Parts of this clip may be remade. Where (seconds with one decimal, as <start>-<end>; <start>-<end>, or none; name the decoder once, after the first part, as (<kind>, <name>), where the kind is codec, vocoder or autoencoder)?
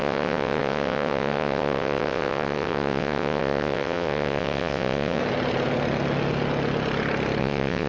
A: 0.0-5.2 (vocoder, WaveNeXt); 7.4-7.9